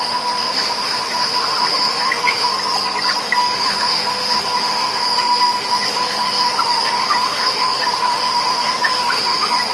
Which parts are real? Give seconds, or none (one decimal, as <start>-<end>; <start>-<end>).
2.5-3.2